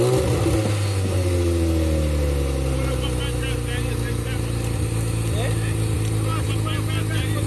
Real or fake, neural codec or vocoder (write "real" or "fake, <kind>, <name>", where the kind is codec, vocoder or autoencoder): real